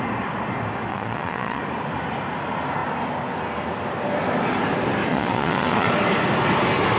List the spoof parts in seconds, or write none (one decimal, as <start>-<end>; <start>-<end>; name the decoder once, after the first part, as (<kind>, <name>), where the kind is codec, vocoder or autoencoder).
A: 0.9-1.6 (vocoder, Vocos); 5.1-5.9